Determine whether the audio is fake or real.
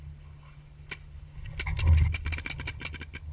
real